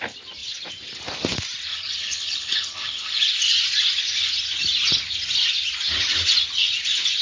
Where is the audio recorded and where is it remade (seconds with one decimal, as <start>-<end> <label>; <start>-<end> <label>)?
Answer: 0.0-1.7 recorded; 1.7-3.3 remade; 3.3-7.2 recorded